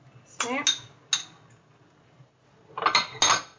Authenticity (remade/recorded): recorded